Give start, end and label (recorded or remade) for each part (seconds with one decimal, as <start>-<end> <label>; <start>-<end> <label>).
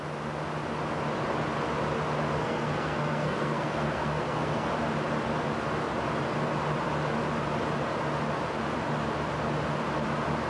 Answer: 0.0-2.4 recorded; 2.4-4.7 remade; 4.7-10.5 recorded